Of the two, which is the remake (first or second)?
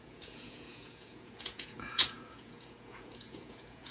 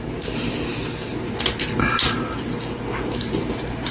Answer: first